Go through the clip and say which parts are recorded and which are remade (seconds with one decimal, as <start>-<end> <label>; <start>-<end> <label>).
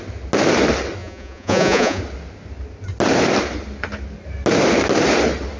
0.0-1.0 recorded; 1.0-2.0 remade; 2.0-5.6 recorded